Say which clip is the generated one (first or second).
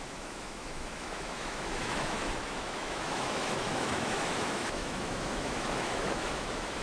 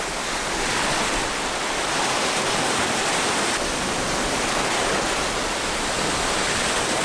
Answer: first